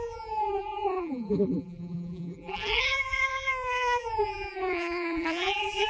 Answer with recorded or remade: remade